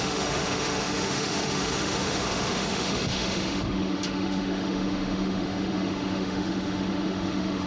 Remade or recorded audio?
remade